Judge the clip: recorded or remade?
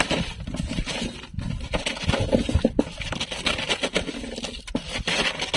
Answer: recorded